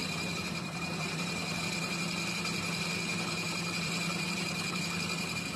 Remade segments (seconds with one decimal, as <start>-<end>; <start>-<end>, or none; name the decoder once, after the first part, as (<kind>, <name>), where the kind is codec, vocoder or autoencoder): 0.0-1.9 (vocoder, BigVGAN v2); 3.1-4.8